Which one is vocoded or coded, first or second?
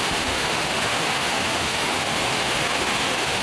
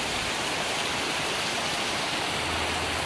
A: first